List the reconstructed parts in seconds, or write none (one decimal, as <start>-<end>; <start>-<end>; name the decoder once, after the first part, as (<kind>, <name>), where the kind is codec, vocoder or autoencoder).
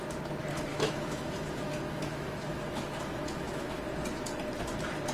0.7-3.8 (autoencoder, DAC-VAE)